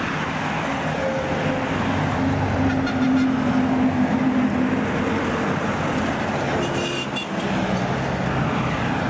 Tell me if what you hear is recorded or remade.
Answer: recorded